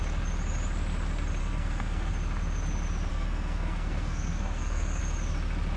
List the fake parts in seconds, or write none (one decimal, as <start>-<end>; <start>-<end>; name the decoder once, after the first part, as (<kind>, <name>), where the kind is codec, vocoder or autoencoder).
1.4-2.1 (codec, SNAC); 3.1-5.0